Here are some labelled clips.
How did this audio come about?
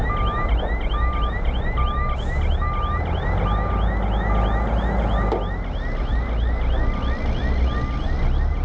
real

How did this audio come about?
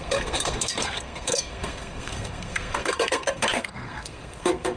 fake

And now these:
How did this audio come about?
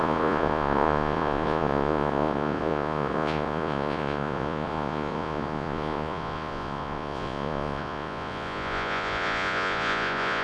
fake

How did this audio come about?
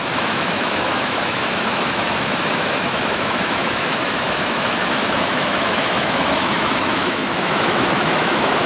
fake